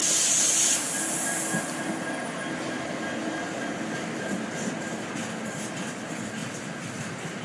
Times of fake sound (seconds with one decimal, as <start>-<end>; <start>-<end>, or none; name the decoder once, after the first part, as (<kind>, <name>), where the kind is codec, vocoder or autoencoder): none